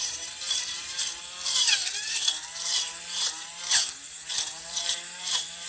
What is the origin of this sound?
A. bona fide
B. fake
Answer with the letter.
B